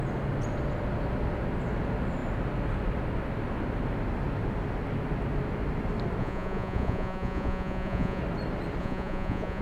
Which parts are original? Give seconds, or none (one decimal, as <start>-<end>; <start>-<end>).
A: 0.0-6.2; 8.2-8.8